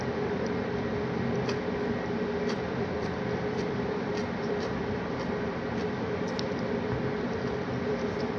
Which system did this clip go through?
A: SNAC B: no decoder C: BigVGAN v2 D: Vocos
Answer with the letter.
C